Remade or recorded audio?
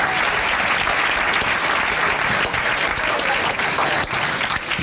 recorded